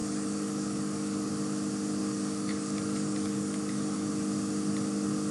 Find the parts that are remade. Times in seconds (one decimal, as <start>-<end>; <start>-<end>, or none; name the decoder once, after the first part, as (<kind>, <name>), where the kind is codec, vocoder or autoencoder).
0.0-1.3 (codec, DAC); 2.0-4.1